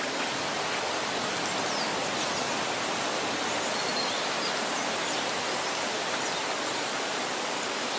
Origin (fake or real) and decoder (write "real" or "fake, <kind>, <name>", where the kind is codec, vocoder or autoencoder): real